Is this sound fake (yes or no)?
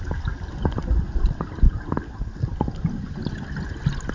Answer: no